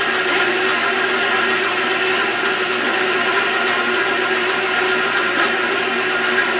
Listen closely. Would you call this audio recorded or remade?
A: recorded